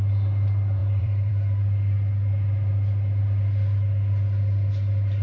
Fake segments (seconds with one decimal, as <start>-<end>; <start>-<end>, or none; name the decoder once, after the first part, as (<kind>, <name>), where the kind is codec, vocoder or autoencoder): 0.8-1.3 (vocoder, BigVGAN v2)